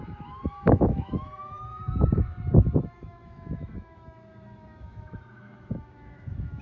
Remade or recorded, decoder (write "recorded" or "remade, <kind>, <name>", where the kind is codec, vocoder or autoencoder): remade, autoencoder, DAC-VAE